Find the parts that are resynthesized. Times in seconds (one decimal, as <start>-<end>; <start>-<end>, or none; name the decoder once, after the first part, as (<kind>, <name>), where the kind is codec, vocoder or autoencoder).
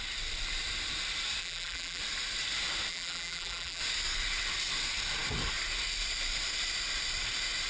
1.4-2.0 (vocoder, BigVGAN v2); 2.9-3.8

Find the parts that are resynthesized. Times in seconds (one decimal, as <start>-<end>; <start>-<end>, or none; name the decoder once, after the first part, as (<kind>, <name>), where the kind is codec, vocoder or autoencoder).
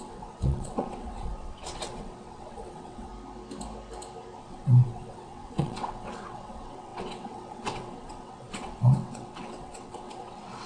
0.0-3.1 (vocoder, WaveNeXt); 4.4-10.7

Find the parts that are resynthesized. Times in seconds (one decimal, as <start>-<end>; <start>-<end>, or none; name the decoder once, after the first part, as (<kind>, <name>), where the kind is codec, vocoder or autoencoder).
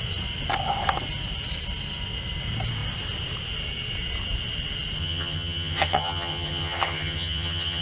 5.0-7.8 (vocoder, HiFi-GAN)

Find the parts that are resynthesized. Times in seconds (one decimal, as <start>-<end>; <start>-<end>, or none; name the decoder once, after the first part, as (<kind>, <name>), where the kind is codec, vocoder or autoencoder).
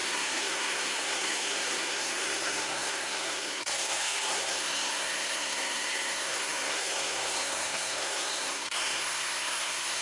0.0-10.0 (codec, SNAC)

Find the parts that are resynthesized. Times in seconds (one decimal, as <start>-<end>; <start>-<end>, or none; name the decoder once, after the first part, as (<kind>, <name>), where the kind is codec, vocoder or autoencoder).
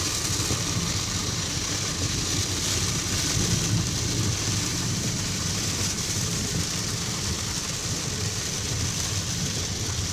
1.2-2.2 (vocoder, BigVGAN v2); 4.7-6.5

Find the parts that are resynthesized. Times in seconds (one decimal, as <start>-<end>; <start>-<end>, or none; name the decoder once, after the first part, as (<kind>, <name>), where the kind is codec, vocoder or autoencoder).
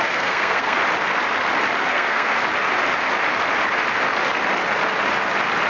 0.0-0.8 (codec, SNAC); 1.9-2.3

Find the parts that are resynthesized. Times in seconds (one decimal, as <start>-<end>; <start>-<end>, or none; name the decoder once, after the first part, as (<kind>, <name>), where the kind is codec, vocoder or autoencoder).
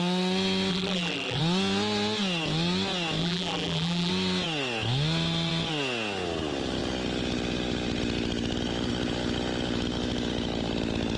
0.7-1.4 (vocoder, BigVGAN v2); 3.2-4.1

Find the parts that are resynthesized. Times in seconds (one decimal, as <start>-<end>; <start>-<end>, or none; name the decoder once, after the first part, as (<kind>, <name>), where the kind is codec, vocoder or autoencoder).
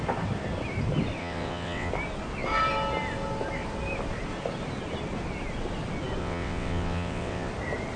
1.2-1.9 (vocoder, WaveNeXt); 6.2-7.5